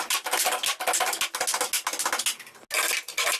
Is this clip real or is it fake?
real